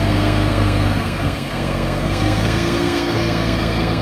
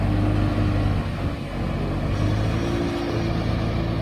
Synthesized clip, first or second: first